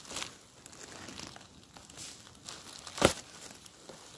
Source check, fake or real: real